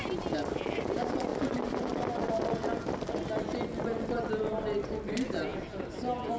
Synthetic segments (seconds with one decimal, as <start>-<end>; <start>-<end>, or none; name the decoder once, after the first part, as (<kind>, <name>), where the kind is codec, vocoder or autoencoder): none